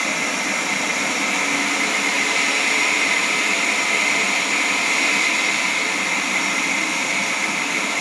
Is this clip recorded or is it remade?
recorded